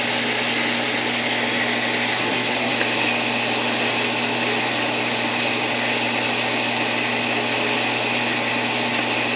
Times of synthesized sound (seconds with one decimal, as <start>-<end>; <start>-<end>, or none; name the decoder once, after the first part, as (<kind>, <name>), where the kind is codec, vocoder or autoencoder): 2.1-2.7 (codec, SNAC)